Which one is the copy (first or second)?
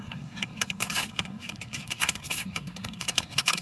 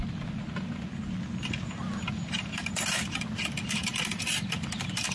first